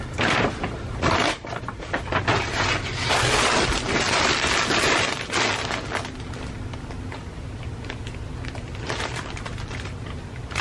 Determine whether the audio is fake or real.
real